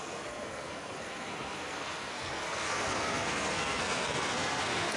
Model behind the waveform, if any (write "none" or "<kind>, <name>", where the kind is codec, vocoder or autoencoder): codec, SNAC